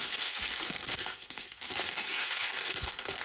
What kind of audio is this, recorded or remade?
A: remade